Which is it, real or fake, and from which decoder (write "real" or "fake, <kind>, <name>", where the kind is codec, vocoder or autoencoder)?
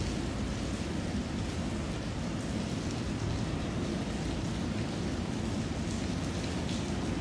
real